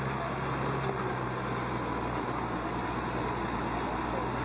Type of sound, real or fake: real